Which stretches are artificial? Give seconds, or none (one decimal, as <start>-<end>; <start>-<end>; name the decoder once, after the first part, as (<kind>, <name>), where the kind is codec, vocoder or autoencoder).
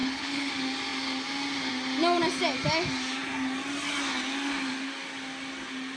0.0-0.5 (codec, HILCodec)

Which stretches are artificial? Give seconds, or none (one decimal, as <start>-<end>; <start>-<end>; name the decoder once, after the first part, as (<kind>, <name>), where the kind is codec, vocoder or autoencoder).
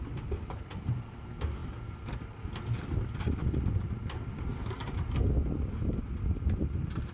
none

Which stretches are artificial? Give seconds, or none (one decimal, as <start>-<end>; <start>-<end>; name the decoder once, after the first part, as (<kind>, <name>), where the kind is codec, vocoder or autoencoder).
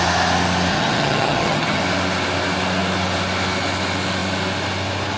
0.7-1.8 (vocoder, HiFi-GAN)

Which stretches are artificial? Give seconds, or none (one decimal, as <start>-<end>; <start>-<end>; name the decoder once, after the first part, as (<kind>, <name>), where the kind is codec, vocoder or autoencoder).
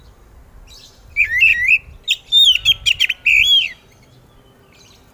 none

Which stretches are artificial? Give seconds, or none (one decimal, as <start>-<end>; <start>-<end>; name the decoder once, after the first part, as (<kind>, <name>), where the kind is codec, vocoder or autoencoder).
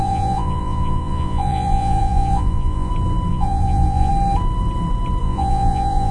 0.0-2.9 (vocoder, Vocos); 3.3-4.1; 5.2-6.1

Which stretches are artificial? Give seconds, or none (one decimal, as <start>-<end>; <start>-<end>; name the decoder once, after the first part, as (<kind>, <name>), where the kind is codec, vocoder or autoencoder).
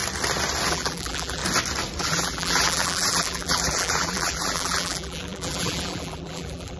0.7-1.4 (vocoder, BigVGAN v2); 2.0-6.8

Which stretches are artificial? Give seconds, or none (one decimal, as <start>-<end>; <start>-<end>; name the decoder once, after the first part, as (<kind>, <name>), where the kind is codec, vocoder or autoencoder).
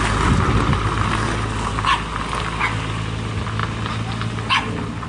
none